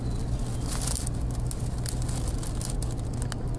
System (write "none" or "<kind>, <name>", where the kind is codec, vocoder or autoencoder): none